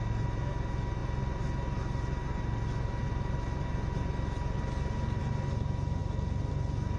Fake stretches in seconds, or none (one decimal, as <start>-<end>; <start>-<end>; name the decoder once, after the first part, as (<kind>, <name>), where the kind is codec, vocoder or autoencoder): none